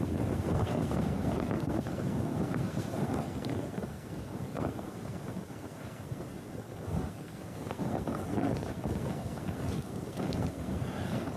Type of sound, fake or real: fake